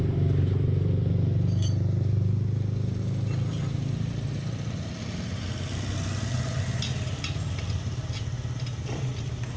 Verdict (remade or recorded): recorded